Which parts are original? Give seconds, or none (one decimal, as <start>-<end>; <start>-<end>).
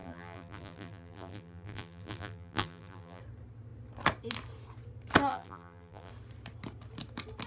3.2-5.3; 6.1-7.5